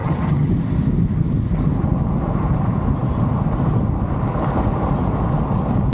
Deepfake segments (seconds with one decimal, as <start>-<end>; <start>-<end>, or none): 0.0-0.5